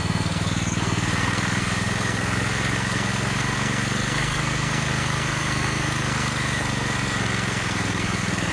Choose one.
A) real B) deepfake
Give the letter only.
B